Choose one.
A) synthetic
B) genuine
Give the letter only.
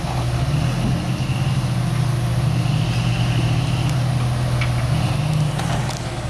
B